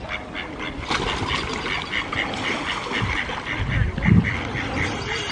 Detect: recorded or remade recorded